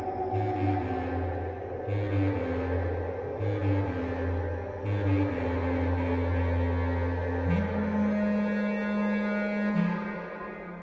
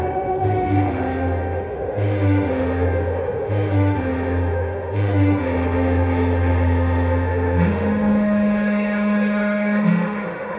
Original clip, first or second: first